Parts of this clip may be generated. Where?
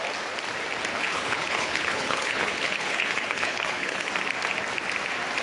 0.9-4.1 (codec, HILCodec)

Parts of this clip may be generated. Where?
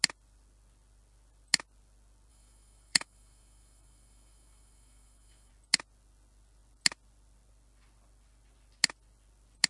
2.3-5.5 (autoencoder, DAC-VAE)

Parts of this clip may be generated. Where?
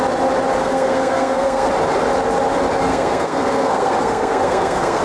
0.6-1.7 (codec, SNAC); 2.9-5.0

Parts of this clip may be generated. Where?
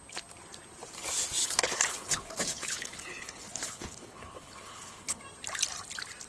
1.4-5.2 (codec, HILCodec)